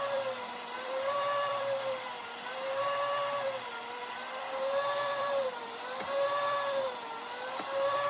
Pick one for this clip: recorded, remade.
remade